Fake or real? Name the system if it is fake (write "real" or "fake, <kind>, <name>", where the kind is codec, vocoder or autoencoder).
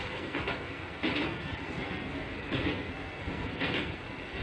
fake, codec, SNAC